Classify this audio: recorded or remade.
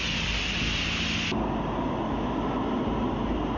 recorded